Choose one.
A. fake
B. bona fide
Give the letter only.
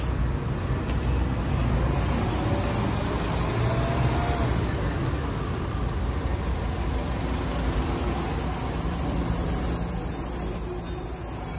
B